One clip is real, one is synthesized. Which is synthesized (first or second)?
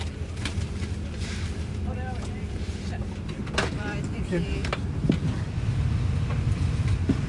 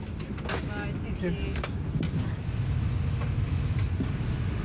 first